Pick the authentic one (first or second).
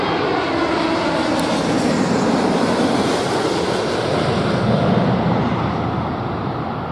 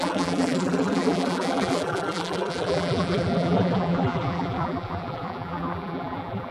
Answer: first